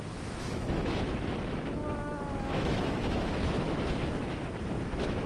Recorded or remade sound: remade